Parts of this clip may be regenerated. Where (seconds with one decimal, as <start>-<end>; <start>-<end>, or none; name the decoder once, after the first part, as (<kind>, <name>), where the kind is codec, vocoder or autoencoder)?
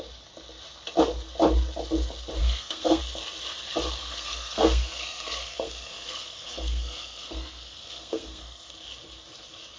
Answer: 2.4-3.0 (codec, SNAC); 4.0-8.7